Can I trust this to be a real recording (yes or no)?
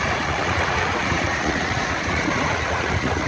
no